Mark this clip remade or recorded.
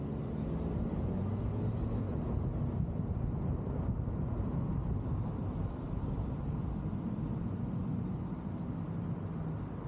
recorded